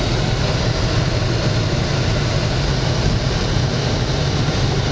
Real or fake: real